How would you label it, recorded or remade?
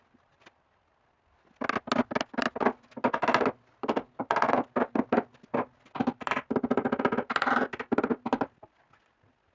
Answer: recorded